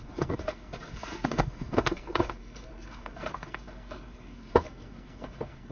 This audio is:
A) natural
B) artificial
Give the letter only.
B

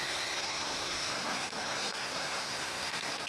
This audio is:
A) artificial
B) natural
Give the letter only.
A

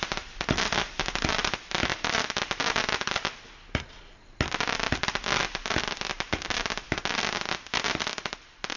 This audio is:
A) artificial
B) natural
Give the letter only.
B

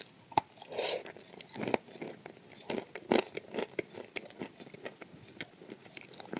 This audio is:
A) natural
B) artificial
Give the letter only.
A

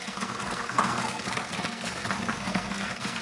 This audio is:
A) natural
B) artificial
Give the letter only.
B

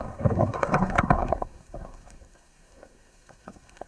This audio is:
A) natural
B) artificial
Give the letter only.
B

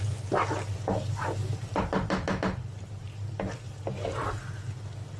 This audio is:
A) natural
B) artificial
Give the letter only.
A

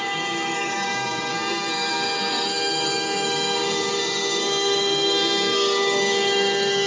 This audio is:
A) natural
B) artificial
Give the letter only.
B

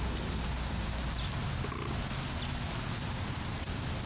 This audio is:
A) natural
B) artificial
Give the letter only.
A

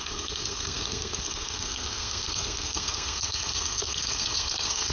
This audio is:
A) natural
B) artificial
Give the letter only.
B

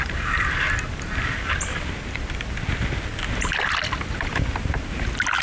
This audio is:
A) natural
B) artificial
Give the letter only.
A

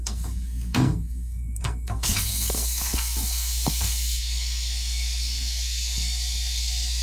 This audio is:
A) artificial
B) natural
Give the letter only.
A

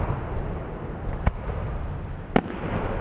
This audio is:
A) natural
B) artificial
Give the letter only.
A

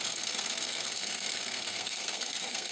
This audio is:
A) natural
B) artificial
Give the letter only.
B